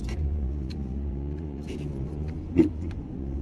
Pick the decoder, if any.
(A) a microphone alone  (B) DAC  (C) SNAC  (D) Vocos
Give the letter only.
D